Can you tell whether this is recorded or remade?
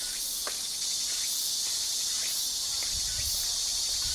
recorded